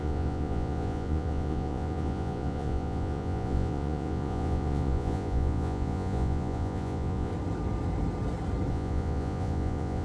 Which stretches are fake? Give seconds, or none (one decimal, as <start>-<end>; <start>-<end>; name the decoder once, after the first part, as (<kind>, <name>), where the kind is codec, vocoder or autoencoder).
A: 0.0-7.3 (vocoder, Vocos); 8.7-10.0